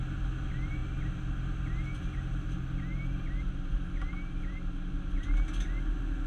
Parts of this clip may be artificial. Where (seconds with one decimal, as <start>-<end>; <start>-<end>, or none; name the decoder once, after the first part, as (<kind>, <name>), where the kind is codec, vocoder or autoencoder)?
none